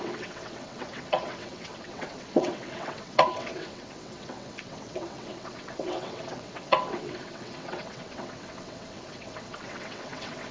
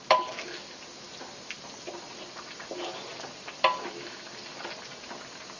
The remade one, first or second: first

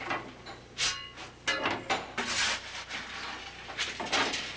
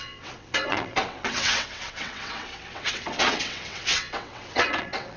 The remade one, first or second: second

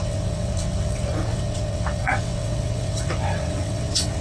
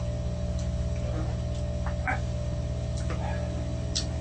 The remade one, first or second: first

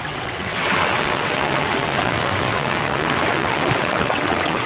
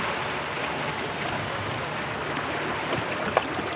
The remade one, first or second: first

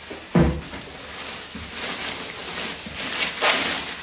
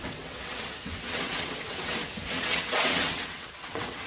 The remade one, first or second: second